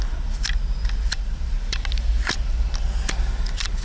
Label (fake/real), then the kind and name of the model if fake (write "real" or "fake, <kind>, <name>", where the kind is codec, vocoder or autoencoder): real